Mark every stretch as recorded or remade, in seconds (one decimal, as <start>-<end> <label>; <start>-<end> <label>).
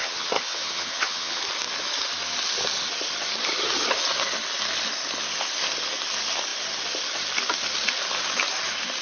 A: 0.0-1.4 remade; 1.4-9.0 recorded